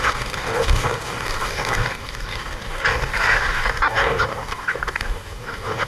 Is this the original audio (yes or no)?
no